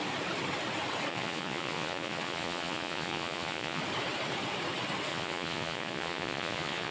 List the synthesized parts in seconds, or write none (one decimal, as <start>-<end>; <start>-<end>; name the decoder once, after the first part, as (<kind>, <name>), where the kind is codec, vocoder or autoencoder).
1.1-3.8 (vocoder, Vocos); 5.1-6.9